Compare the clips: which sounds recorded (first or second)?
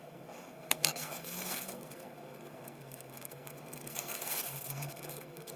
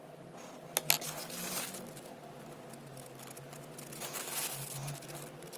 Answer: second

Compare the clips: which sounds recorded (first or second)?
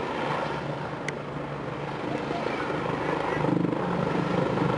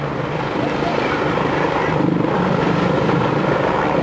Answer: first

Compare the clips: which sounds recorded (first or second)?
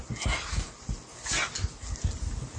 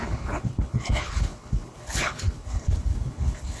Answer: first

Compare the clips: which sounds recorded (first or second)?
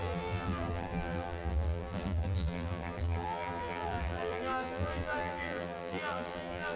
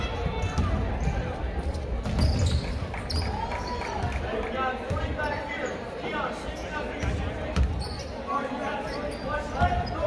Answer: second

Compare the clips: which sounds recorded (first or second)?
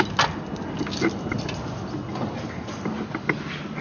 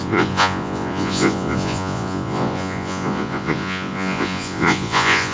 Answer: first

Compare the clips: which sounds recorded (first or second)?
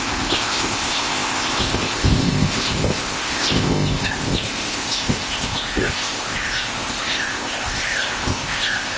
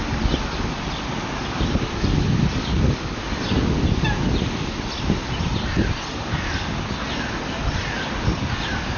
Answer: second